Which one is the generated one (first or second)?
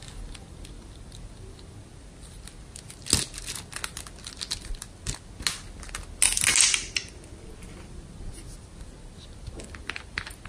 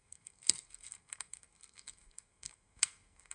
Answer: second